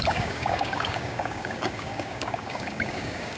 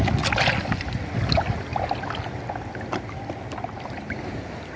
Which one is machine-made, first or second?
first